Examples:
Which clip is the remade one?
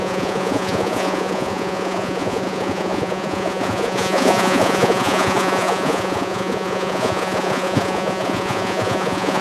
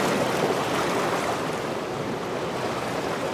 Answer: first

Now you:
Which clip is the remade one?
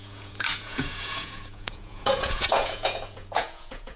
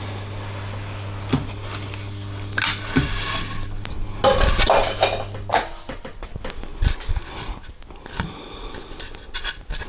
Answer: first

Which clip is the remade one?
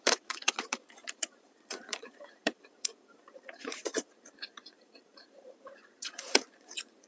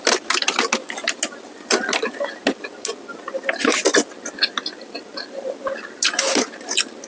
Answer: first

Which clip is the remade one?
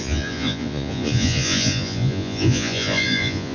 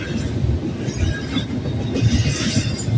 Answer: first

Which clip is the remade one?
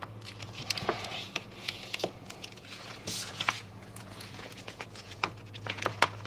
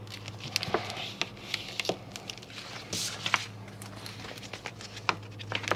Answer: first